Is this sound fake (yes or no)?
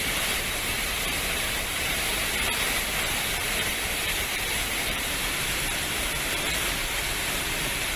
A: yes